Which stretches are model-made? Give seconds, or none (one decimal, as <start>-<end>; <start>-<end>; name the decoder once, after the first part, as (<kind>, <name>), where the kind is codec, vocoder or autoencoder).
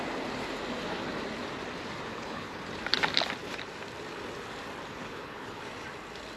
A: 2.1-2.6 (codec, HILCodec); 4.9-5.6